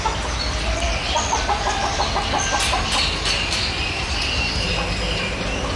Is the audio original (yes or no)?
yes